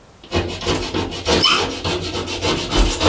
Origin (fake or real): real